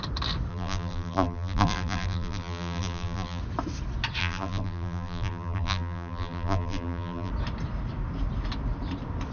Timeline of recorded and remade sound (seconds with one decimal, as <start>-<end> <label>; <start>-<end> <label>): 0.0-0.5 recorded; 0.5-3.4 remade; 3.4-4.2 recorded; 4.2-7.3 remade; 7.3-9.3 recorded